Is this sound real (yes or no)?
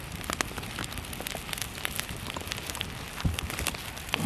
yes